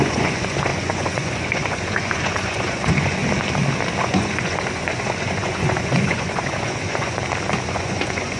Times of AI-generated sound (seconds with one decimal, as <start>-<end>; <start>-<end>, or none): 0.0-3.2; 4.0-7.2; 7.7-8.4